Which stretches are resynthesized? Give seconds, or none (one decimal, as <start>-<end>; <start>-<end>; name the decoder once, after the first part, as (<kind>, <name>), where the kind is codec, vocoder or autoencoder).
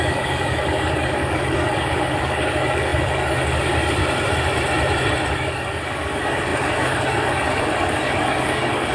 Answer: 0.0-4.0 (codec, DAC); 5.3-8.9